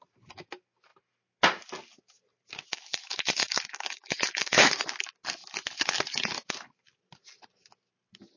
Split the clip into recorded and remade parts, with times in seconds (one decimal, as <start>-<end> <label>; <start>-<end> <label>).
0.0-2.7 recorded; 2.7-4.7 remade; 4.7-8.4 recorded